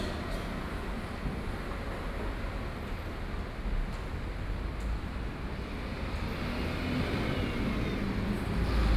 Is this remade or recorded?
recorded